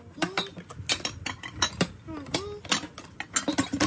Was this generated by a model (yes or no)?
no